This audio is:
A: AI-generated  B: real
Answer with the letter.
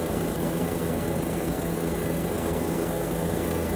A